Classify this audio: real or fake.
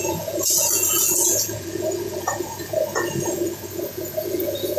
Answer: fake